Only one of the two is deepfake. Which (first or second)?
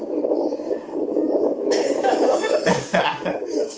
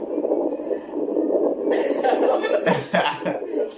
first